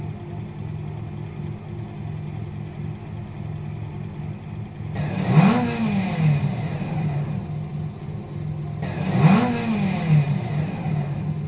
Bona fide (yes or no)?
yes